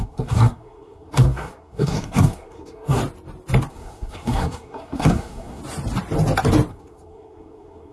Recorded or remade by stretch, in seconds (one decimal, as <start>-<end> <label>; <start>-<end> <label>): 0.0-3.0 remade; 3.0-3.7 recorded; 3.7-5.6 remade; 5.6-6.7 recorded; 6.7-7.9 remade